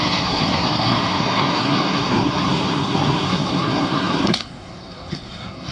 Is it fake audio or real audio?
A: fake